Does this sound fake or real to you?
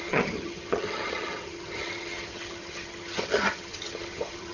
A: fake